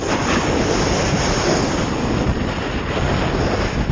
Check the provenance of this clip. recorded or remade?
recorded